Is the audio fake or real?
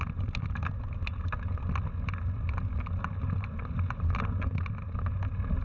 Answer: real